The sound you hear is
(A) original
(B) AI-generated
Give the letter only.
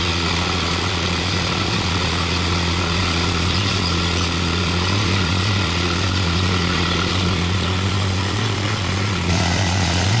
B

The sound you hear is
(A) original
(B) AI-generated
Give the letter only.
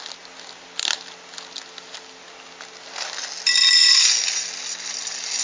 A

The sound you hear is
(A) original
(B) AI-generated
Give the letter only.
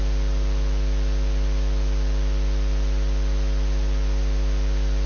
A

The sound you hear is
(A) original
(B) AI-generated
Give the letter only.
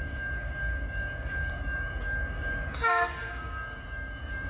B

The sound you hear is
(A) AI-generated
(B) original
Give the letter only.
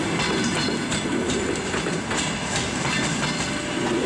B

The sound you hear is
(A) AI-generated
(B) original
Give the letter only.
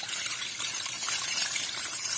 A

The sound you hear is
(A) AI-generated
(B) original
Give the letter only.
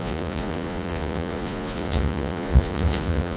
A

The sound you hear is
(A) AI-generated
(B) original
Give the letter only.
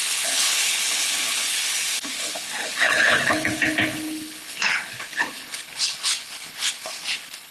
A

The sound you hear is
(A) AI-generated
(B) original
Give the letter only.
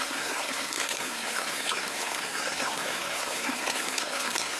A